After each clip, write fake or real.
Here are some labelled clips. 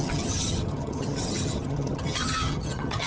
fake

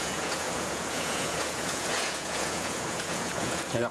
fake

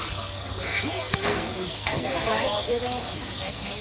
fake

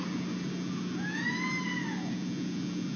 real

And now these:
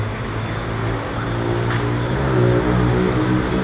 real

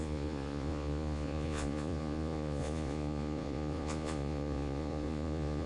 fake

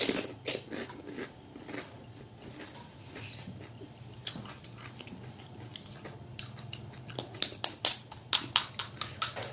real